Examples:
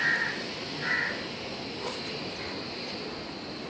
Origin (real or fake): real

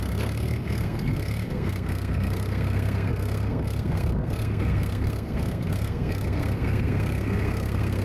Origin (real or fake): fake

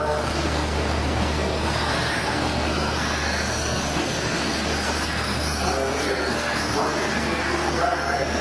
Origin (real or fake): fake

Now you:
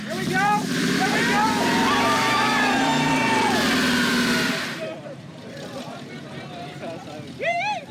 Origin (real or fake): fake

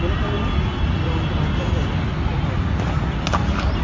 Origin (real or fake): real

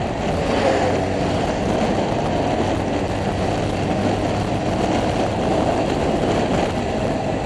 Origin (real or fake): real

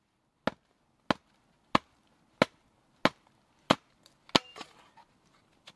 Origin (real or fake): real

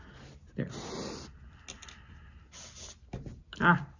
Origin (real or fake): real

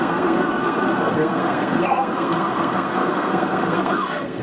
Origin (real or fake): fake